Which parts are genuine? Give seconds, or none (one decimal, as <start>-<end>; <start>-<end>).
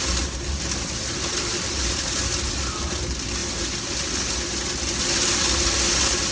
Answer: 0.0-6.3